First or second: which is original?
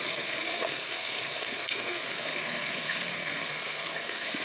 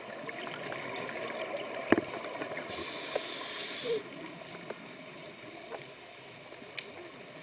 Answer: second